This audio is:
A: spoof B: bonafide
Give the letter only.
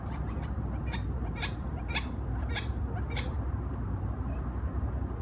A